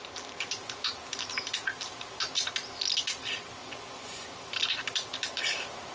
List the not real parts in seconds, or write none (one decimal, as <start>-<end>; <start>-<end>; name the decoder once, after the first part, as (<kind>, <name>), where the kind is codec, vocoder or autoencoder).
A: 3.6-4.3 (vocoder, Vocos)